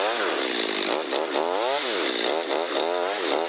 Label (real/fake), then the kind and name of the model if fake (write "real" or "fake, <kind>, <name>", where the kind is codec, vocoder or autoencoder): real